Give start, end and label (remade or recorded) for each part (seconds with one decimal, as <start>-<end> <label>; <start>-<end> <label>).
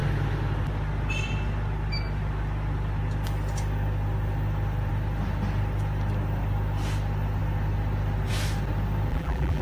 0.0-9.1 recorded; 9.1-9.6 remade